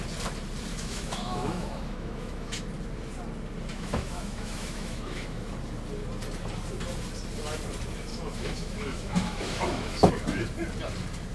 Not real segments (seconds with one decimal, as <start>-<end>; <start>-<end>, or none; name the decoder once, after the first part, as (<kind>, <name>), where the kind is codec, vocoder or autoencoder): 0.7-2.6 (autoencoder, DAC-VAE); 3.7-5.5; 8.1-10.1